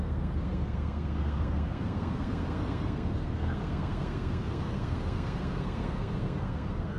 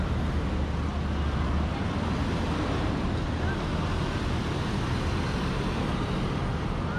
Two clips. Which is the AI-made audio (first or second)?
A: first